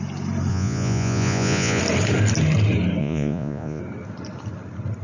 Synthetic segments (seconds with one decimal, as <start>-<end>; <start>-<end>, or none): 0.5-1.8; 3.0-3.8